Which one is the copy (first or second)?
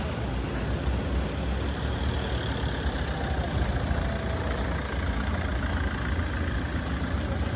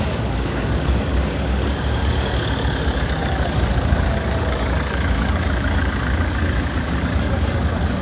second